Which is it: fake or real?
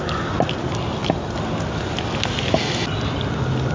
real